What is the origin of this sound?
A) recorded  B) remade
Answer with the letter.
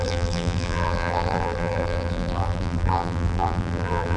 B